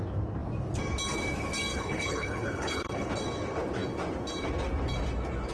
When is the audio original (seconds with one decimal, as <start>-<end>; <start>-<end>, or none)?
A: 0.0-1.7; 3.1-5.5